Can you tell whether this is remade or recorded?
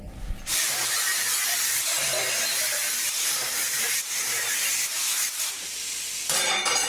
remade